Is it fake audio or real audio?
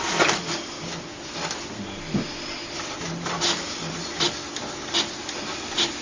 real